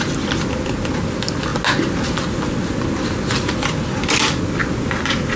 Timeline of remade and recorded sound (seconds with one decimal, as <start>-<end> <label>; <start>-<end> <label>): 0.0-5.4 recorded